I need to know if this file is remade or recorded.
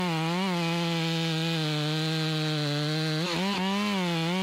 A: recorded